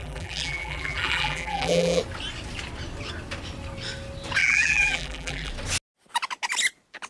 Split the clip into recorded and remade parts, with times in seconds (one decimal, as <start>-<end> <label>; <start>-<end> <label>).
0.0-2.0 remade; 2.0-4.4 recorded; 4.4-5.5 remade; 5.5-7.1 recorded